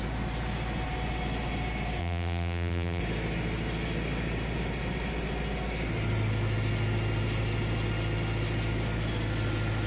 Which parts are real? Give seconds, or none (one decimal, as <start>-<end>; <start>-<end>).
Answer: 0.0-2.0; 3.0-9.9